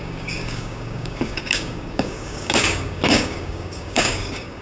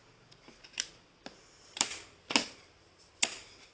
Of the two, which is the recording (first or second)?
second